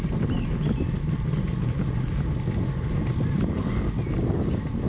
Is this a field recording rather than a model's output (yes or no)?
yes